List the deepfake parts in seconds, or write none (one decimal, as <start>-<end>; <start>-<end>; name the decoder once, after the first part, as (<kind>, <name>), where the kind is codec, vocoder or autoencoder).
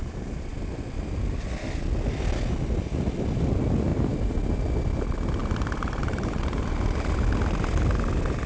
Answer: 3.9-4.6 (vocoder, BigVGAN v2); 5.4-6.7